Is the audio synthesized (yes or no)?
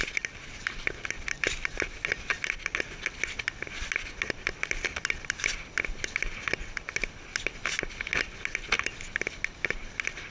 no